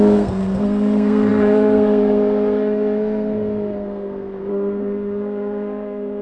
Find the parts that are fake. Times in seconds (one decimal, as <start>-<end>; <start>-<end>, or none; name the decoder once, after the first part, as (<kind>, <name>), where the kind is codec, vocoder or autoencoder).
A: 0.0-6.2 (codec, SNAC)